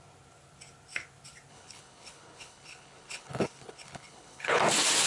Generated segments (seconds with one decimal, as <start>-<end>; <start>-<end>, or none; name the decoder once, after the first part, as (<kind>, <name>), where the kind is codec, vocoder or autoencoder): 1.5-4.6 (codec, HILCodec)